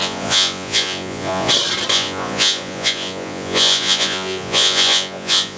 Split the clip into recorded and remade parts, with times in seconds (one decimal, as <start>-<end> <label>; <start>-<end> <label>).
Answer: 0.0-1.5 remade; 1.5-1.9 recorded; 1.9-5.6 remade